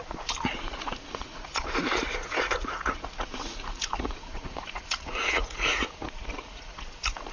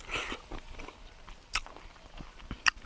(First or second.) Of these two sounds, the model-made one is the first